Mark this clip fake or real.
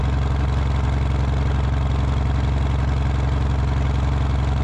real